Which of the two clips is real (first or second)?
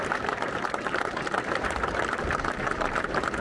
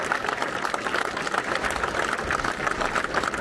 second